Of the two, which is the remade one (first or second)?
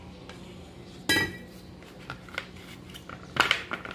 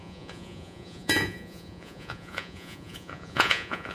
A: second